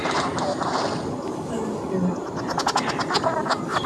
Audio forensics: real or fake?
real